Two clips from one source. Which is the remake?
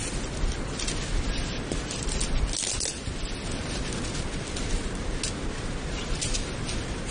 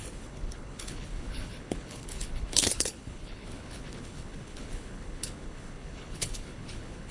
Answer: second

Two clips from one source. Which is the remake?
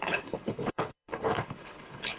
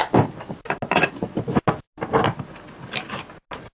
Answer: first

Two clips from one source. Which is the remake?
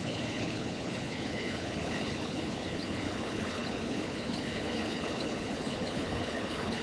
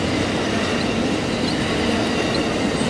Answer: first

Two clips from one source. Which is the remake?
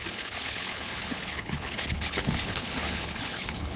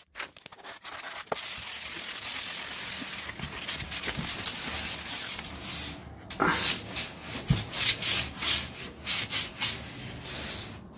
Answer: first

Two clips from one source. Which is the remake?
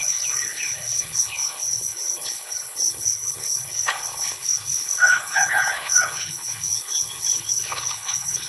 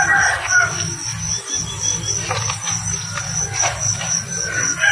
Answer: first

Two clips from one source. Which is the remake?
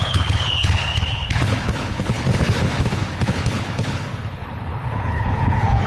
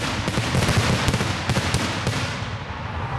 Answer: first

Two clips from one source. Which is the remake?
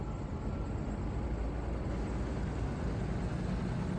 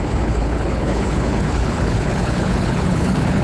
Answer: second